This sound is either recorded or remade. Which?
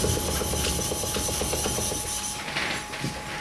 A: recorded